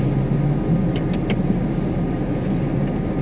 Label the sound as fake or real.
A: real